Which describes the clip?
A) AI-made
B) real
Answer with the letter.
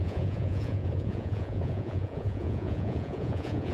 A